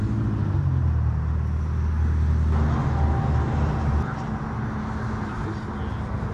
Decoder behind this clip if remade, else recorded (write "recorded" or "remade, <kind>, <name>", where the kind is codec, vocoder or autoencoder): recorded